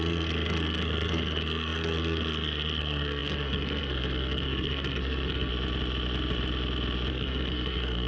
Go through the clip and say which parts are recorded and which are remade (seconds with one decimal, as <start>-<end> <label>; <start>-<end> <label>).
0.0-5.5 remade; 5.5-7.1 recorded; 7.1-8.1 remade